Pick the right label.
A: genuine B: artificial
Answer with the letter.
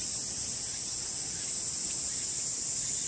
A